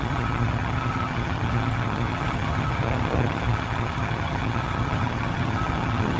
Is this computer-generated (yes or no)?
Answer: yes